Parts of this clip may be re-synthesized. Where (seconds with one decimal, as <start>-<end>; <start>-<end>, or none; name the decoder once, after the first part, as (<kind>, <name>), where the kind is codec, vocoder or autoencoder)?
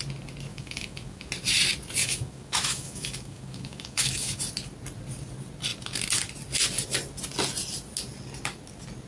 0.5-1.3 (autoencoder, DAC-VAE); 2.0-4.4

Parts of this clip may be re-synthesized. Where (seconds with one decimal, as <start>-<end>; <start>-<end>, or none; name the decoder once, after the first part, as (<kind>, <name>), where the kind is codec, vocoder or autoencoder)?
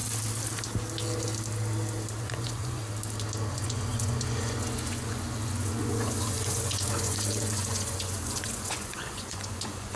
2.2-2.8 (vocoder, Vocos); 3.5-10.0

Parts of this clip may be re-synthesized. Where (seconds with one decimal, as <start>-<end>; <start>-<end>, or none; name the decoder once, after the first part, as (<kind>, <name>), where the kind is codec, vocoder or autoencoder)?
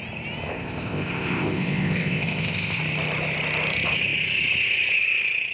0.5-2.8 (codec, ZipCodec)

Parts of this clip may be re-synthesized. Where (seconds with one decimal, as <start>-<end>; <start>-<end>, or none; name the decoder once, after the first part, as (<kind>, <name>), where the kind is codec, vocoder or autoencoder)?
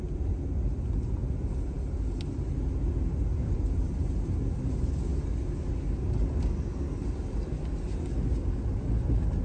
none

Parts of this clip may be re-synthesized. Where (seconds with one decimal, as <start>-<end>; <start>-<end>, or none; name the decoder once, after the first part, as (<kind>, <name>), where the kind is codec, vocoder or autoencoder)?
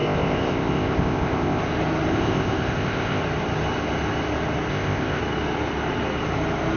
0.0-1.6 (codec, ZipCodec); 2.1-3.2; 4.7-5.2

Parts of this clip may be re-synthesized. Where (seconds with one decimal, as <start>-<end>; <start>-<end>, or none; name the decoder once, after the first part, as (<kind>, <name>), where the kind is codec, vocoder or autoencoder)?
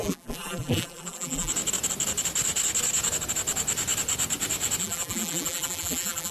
0.0-1.5 (vocoder, BigVGAN v2); 4.8-6.3